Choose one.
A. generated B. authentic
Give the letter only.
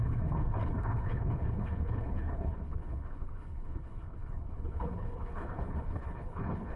A